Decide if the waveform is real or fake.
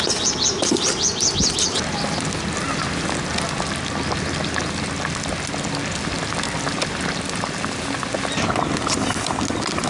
real